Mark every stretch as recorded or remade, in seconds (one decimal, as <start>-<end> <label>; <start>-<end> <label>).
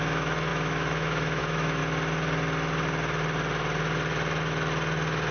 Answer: 0.0-1.8 remade; 1.8-5.3 recorded